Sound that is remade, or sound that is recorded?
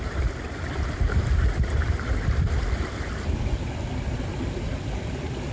recorded